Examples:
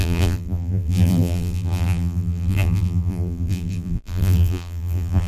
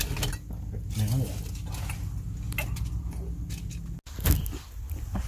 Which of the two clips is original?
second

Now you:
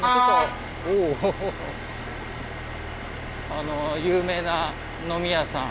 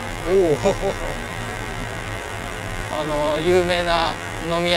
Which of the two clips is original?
first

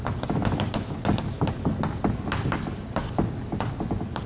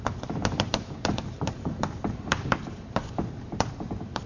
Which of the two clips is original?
first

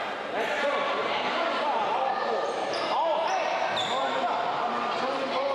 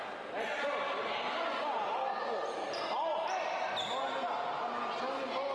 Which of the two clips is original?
second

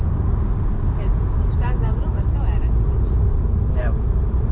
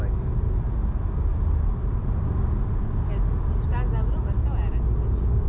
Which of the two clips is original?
second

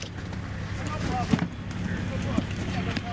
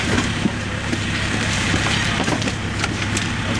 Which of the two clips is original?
first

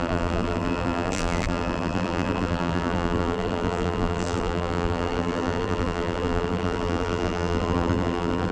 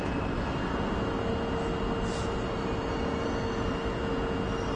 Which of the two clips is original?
second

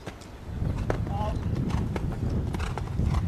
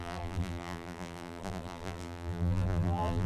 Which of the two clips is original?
first